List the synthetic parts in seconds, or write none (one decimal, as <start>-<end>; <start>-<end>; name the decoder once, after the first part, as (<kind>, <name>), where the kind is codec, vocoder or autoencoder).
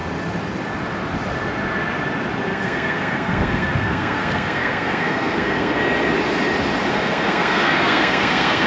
2.5-5.8 (codec, SNAC); 6.9-8.7